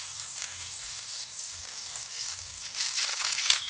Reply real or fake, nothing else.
fake